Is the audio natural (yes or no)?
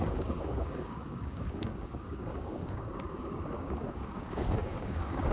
no